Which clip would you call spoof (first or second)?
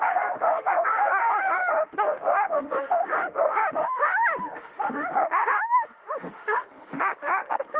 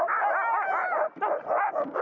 first